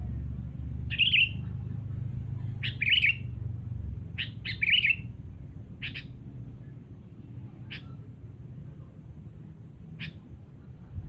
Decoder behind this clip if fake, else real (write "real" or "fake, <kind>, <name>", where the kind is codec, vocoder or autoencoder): real